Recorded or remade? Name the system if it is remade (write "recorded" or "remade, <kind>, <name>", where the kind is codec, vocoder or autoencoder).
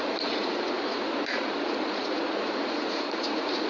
remade, vocoder, Vocos